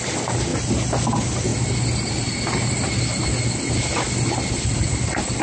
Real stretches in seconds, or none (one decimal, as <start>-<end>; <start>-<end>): 0.0-5.4